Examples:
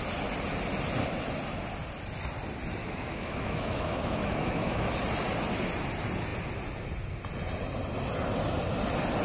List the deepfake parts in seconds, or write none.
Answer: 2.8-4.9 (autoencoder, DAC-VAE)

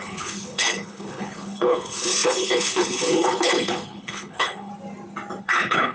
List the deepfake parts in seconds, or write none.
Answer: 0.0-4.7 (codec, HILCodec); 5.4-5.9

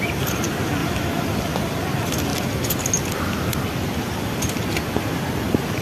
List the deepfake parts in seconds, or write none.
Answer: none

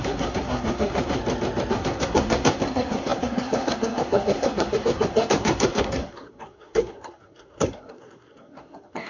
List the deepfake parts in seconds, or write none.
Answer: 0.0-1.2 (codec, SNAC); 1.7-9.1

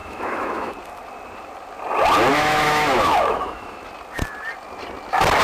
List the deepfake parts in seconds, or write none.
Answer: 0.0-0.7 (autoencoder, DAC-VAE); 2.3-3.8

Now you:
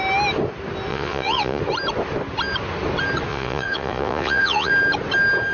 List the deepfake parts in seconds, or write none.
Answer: 0.9-1.6 (vocoder, Vocos); 3.3-4.7